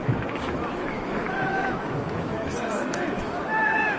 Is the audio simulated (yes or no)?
yes